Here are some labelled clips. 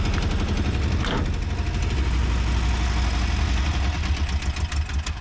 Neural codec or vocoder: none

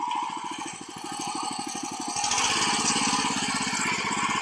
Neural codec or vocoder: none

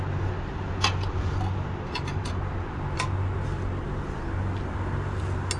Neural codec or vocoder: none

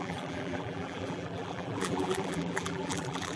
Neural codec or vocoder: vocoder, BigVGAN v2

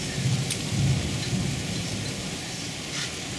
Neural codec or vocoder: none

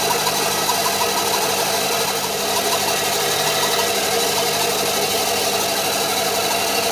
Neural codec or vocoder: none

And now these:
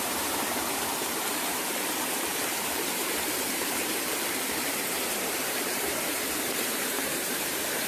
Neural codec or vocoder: vocoder, BigVGAN v2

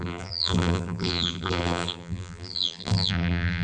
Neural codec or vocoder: vocoder, BigVGAN v2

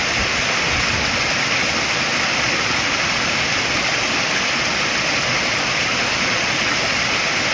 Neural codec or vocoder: none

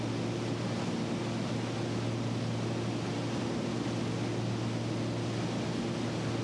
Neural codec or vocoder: none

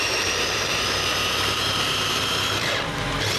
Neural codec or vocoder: vocoder, BigVGAN v2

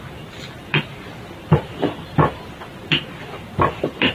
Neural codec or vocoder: vocoder, BigVGAN v2